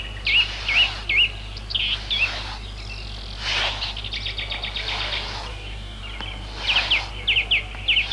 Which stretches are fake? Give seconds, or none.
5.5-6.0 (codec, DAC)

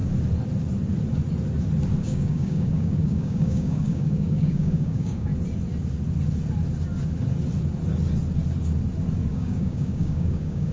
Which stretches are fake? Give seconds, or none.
2.0-5.3 (codec, DAC); 9.3-10.7

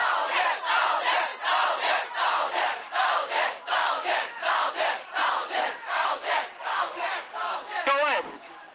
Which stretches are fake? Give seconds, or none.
2.8-4.7 (codec, DAC); 5.4-8.7

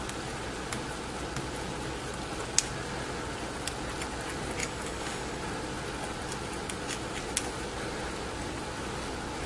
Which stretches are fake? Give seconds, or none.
4.6-5.4 (codec, DAC)

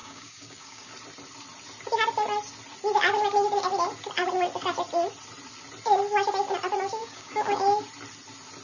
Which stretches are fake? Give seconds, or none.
0.0-0.9 (codec, DAC); 7.0-7.6

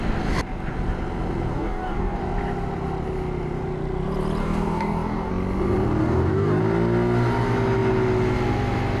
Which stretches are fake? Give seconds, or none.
1.5-2.2 (codec, DAC); 4.4-5.3; 6.0-6.6